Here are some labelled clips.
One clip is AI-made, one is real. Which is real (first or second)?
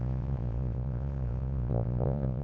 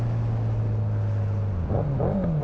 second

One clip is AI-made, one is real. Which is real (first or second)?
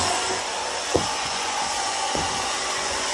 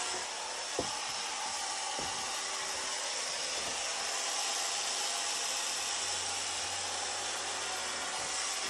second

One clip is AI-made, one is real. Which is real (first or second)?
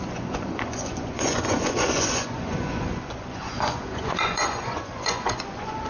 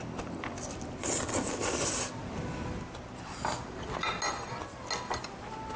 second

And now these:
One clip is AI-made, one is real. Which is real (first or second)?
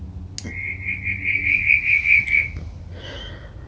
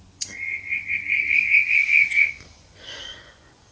first